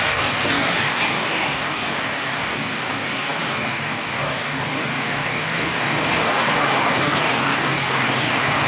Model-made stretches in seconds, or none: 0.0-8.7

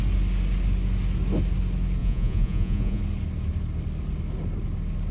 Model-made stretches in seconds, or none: 2.0-3.0

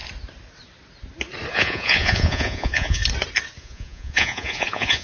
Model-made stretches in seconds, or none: 1.5-3.0; 3.6-5.0

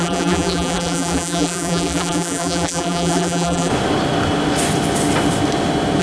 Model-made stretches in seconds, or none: 0.0-3.7

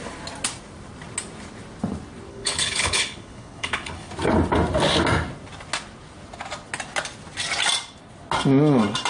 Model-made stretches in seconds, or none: 2.3-4.1

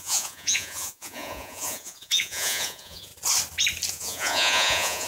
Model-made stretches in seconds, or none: 0.0-3.1; 3.9-5.1